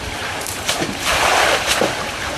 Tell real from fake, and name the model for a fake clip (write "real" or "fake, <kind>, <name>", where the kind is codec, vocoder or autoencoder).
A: real